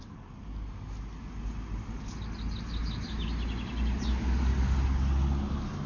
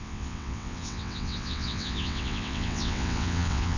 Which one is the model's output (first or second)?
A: second